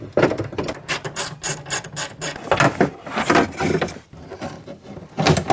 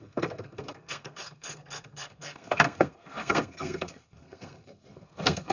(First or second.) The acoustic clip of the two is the first